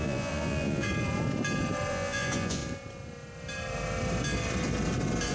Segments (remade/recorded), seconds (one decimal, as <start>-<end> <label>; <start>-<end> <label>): 0.0-0.9 remade; 0.9-1.9 recorded; 1.9-2.6 remade; 2.6-5.3 recorded